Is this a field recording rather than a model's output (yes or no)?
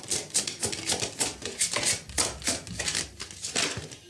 yes